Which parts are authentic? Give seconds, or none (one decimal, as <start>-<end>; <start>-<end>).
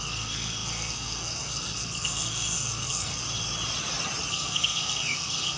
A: 3.2-4.3